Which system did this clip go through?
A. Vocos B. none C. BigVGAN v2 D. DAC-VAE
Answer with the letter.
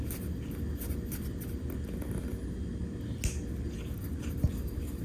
B